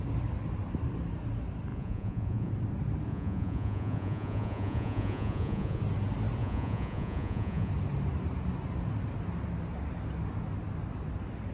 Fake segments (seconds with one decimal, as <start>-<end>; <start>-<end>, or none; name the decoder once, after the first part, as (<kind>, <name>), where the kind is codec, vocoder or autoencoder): 1.7-2.5 (vocoder, Vocos); 3.1-5.8; 6.4-7.7